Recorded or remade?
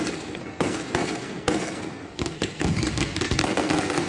remade